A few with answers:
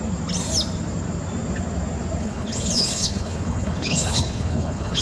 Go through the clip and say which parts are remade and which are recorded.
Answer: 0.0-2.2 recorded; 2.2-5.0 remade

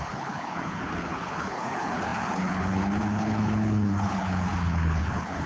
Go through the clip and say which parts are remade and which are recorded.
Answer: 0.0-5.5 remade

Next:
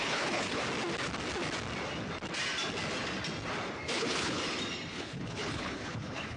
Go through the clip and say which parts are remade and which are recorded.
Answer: 0.0-0.6 remade; 0.6-3.9 recorded; 3.9-4.4 remade; 4.4-4.9 recorded; 4.9-6.4 remade

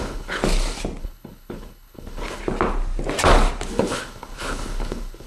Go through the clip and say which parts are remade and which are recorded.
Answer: 0.0-0.4 remade; 0.4-1.0 recorded; 1.0-2.4 remade; 2.4-3.7 recorded; 3.7-5.3 remade